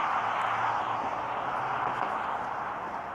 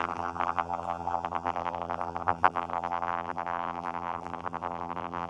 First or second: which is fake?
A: second